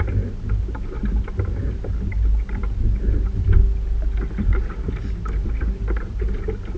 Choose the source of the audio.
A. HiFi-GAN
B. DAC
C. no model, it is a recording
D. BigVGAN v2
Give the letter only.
C